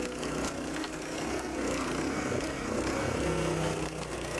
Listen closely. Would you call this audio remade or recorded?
remade